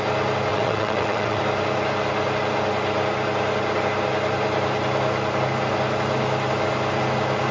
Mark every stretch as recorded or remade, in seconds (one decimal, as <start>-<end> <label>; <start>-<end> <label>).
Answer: 0.0-0.5 recorded; 0.5-1.4 remade; 1.4-7.5 recorded

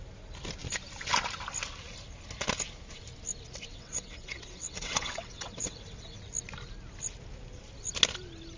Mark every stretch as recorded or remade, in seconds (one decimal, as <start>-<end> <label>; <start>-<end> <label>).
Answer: 0.0-3.7 recorded; 3.7-6.2 remade; 6.2-8.6 recorded

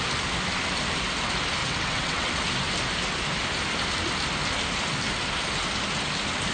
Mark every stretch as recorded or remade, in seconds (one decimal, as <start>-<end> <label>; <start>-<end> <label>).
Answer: 0.0-1.6 recorded; 1.6-2.3 remade; 2.3-6.5 recorded

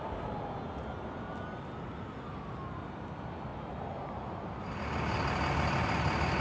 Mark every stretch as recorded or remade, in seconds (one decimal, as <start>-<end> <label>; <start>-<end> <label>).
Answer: 0.0-6.4 recorded

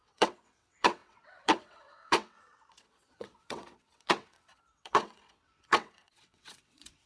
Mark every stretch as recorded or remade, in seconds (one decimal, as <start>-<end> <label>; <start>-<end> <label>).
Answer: 0.0-7.1 remade

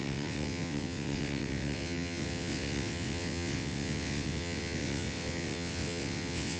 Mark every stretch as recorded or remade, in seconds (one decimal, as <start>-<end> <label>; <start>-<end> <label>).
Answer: 0.0-6.6 remade

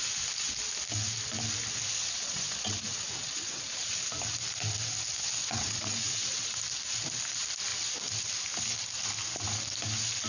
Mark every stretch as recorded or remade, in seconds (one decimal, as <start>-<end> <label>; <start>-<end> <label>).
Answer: 0.0-2.0 recorded; 2.0-4.0 remade; 4.0-5.4 recorded; 5.4-6.6 remade; 6.6-10.3 recorded

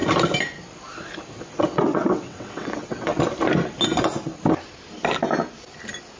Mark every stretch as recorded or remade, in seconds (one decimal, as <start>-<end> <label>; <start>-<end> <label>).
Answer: 0.0-1.6 recorded; 1.6-3.1 remade; 3.1-6.2 recorded